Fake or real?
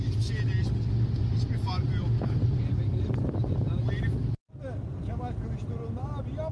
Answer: real